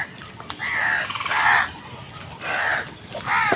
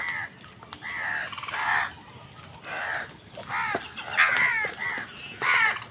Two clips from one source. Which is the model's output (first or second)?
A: first